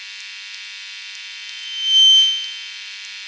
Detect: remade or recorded recorded